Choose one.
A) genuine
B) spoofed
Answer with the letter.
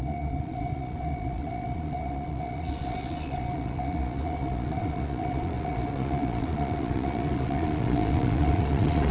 B